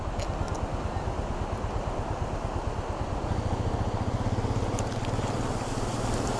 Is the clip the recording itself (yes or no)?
yes